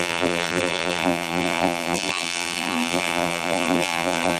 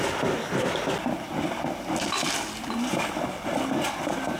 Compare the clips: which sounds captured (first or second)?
second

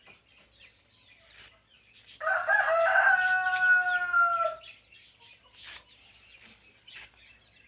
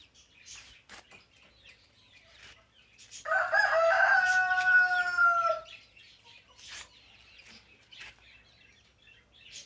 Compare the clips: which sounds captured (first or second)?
first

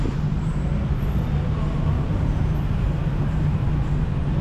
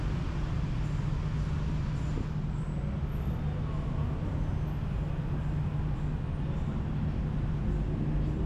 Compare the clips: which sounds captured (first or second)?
second